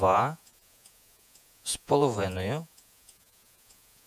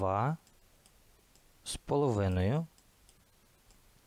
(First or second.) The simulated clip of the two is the first